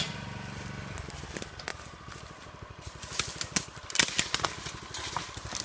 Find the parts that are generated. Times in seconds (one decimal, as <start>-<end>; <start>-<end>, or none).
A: none